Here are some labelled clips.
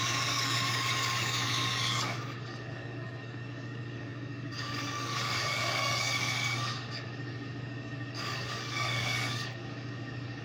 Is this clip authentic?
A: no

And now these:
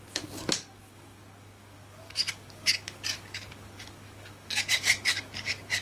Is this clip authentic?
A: no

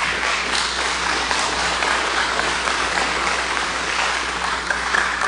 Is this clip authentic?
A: no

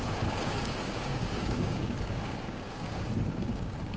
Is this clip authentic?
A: no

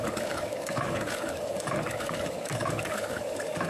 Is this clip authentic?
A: no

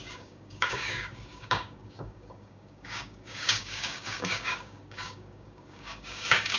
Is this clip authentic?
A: no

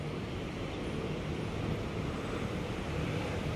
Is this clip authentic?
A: yes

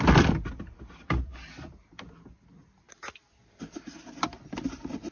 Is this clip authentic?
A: yes